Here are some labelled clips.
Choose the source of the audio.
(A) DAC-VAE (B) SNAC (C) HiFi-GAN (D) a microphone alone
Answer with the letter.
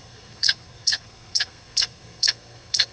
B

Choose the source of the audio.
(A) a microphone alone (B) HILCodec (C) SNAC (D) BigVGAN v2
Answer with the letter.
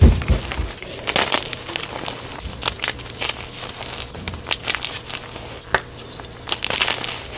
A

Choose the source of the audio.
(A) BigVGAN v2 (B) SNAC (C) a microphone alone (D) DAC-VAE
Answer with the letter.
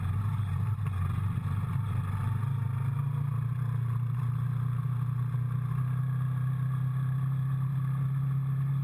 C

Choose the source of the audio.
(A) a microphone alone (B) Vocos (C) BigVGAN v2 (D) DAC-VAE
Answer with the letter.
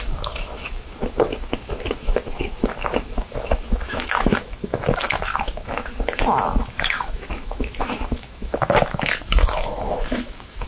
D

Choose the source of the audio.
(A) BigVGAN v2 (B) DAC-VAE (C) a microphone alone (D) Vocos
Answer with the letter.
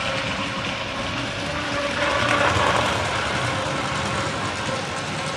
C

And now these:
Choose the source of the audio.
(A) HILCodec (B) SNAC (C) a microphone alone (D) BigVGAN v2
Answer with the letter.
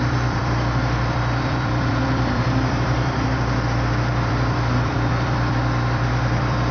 D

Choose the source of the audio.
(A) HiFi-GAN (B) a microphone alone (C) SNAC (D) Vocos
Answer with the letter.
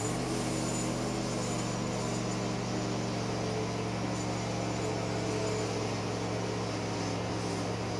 B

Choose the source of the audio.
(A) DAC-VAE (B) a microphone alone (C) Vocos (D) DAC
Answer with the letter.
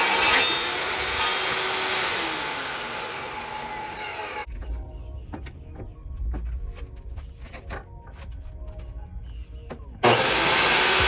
B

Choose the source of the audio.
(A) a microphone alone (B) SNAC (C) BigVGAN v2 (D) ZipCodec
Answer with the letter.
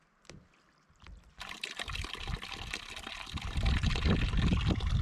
A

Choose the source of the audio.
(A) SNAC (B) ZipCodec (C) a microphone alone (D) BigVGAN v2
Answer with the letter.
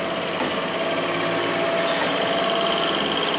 C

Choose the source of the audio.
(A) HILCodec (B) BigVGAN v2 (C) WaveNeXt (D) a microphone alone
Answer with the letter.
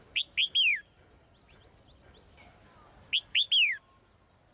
D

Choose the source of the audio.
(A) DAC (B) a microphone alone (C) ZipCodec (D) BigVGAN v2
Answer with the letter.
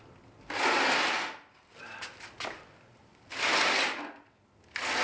B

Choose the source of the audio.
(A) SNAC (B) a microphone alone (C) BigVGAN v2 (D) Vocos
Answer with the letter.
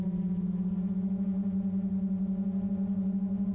B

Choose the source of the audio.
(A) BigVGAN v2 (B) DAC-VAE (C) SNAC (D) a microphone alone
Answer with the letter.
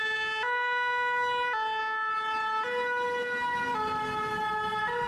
D